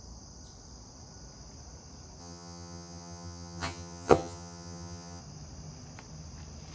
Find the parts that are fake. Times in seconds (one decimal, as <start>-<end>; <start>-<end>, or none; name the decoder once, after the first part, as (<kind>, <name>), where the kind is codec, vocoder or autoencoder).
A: 2.2-5.2 (vocoder, HiFi-GAN)

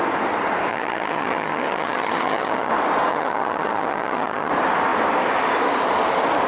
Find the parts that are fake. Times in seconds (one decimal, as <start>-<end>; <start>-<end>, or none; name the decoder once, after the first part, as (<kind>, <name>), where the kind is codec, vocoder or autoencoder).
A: 0.7-2.7 (vocoder, HiFi-GAN); 3.1-4.5